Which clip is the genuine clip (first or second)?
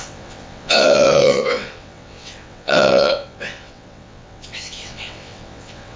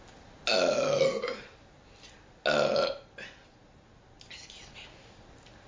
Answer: second